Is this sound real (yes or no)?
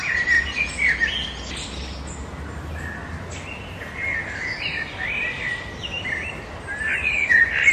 yes